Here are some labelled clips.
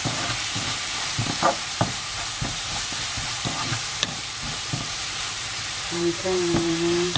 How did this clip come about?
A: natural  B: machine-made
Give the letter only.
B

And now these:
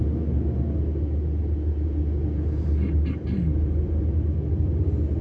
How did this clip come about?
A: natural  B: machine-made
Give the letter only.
A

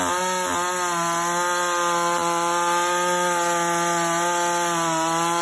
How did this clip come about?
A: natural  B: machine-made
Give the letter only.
A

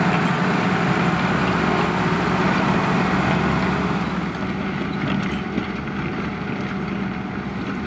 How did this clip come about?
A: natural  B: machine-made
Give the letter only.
A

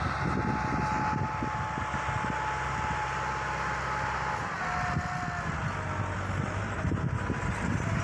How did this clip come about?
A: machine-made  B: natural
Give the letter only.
B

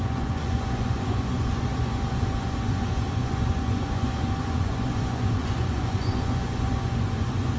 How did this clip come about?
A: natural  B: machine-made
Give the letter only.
B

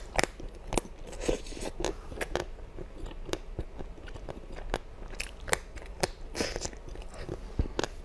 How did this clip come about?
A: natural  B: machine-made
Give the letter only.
A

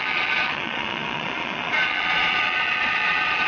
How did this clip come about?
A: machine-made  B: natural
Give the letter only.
A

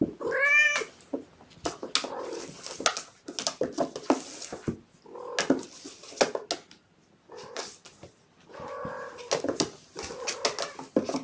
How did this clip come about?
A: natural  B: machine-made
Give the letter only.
A